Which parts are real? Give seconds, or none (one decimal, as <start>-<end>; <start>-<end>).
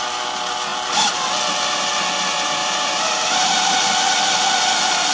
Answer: 0.0-2.6; 3.9-5.1